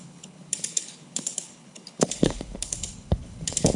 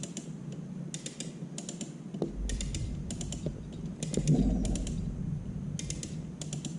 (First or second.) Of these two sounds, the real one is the second